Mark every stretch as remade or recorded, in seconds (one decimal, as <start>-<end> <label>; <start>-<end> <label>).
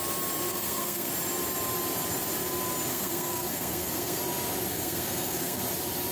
0.0-0.5 recorded; 0.5-1.1 remade; 1.1-2.9 recorded; 2.9-4.2 remade; 4.2-4.7 recorded; 4.7-5.6 remade; 5.6-6.1 recorded